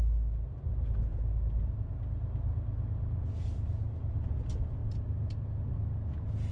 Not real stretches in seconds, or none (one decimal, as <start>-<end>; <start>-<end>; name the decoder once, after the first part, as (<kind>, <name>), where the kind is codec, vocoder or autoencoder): 1.1-1.9 (vocoder, BigVGAN v2)